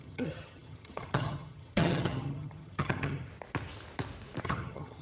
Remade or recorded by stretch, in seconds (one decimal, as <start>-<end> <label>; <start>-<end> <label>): 0.0-3.3 remade; 3.3-4.4 recorded; 4.4-5.0 remade